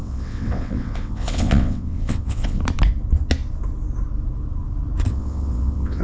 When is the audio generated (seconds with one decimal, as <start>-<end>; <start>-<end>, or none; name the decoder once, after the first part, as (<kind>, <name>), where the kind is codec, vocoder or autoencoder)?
0.0-2.6 (vocoder, WaveNeXt); 5.1-6.0